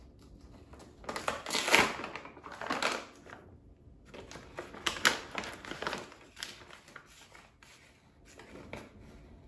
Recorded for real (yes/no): yes